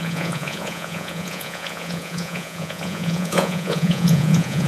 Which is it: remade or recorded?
remade